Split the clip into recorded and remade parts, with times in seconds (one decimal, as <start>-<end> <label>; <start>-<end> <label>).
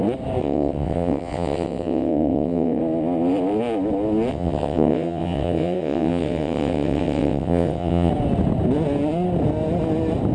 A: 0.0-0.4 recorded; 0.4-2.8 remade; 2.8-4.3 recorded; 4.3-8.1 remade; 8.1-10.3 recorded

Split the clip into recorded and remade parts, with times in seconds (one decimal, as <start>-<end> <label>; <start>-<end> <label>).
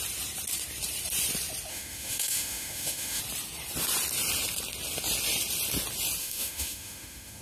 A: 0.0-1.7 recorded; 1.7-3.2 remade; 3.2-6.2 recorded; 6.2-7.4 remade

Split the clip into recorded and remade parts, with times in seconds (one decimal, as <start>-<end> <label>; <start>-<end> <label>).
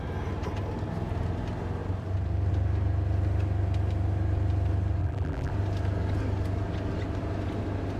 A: 0.0-5.0 recorded; 5.0-5.5 remade; 5.5-8.0 recorded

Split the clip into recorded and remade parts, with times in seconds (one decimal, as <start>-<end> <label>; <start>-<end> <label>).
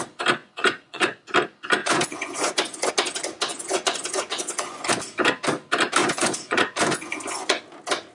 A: 0.0-0.4 recorded; 0.4-1.2 remade; 1.2-1.8 recorded; 1.8-2.9 remade; 2.9-3.5 recorded; 3.5-4.8 remade; 4.8-6.0 recorded; 6.0-7.6 remade; 7.6-8.1 recorded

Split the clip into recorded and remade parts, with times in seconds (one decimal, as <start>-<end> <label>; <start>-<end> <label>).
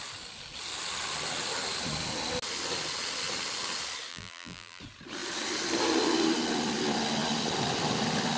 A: 0.0-4.1 recorded; 4.1-4.8 remade; 4.8-8.4 recorded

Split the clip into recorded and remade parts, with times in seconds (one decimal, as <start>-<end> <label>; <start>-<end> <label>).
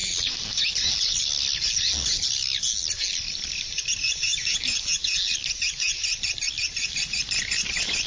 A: 0.0-8.1 recorded